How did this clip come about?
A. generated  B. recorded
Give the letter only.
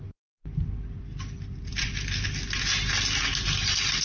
B